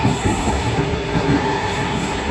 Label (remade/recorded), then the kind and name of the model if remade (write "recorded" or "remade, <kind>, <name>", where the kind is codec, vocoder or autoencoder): remade, codec, SNAC